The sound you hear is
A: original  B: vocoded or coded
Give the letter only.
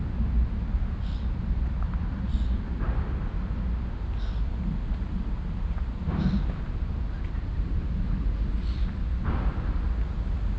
A